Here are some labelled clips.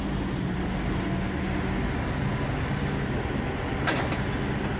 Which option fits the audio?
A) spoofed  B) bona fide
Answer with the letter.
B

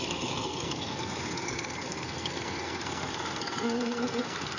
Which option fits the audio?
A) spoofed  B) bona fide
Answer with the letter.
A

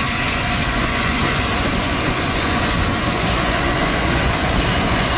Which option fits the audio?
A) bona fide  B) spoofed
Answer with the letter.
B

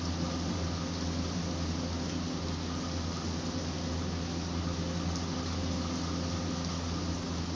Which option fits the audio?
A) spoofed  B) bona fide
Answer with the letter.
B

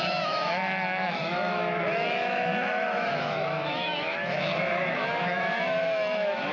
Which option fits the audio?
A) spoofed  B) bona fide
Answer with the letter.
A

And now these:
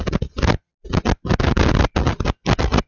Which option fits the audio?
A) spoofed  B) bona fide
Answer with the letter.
B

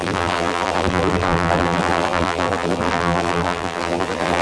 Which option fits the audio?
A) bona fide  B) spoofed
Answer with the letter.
B